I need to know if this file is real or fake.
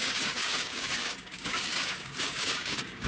fake